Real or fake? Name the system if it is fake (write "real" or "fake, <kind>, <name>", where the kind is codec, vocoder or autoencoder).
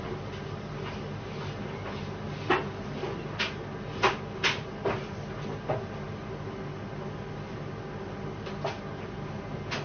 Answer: real